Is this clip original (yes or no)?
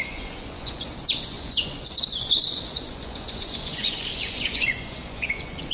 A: no